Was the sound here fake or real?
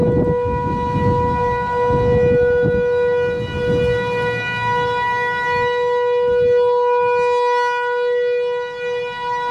real